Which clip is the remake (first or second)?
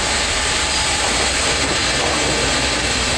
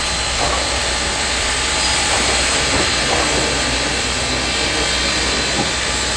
first